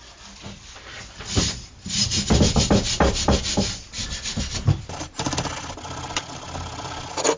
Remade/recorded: recorded